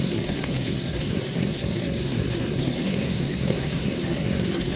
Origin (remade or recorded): remade